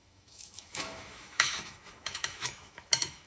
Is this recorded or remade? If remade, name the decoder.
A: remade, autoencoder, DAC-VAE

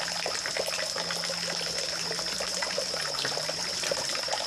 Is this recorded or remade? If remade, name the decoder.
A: recorded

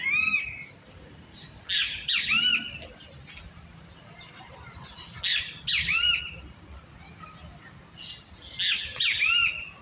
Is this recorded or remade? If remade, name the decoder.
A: recorded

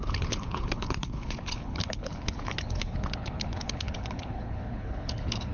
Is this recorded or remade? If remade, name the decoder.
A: remade, codec, HILCodec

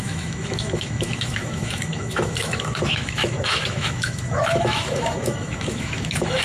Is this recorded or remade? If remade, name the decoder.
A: remade, autoencoder, DAC-VAE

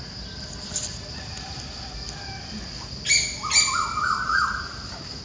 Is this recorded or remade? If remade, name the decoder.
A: recorded